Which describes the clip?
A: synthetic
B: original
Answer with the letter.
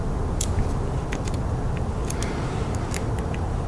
B